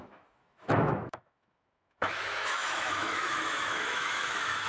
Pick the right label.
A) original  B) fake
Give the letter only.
B